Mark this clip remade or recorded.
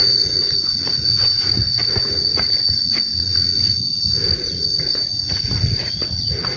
remade